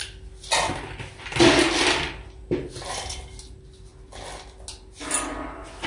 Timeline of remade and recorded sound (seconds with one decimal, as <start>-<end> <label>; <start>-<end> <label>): 0.0-5.9 recorded